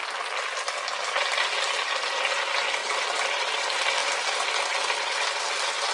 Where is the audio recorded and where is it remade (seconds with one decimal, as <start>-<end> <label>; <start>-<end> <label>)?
0.0-5.9 recorded